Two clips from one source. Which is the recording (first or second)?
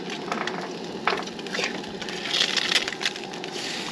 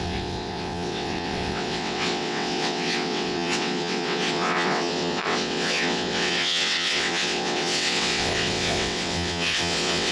first